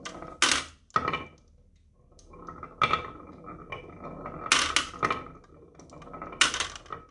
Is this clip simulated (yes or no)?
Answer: no